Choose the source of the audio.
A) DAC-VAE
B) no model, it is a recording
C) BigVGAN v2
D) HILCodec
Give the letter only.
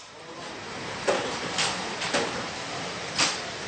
C